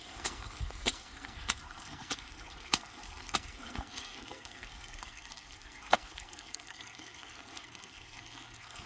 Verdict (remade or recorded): remade